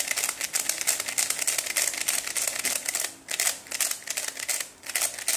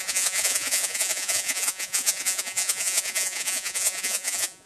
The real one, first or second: first